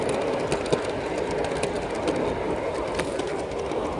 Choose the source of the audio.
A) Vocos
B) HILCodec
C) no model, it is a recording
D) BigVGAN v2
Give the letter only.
C